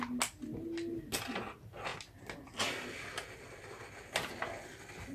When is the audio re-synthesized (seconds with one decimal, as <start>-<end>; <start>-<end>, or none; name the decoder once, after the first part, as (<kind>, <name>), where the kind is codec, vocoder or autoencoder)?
none